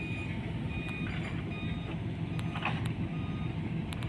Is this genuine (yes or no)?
yes